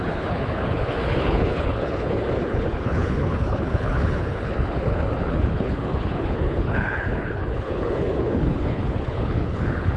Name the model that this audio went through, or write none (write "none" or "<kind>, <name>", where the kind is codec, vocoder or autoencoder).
codec, HILCodec